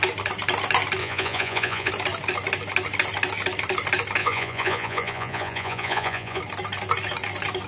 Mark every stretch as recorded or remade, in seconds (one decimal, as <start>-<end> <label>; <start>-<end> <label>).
0.0-1.0 recorded; 1.0-1.9 remade; 1.9-4.2 recorded; 4.2-6.4 remade; 6.4-7.7 recorded